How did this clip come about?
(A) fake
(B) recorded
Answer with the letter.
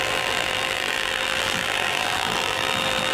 A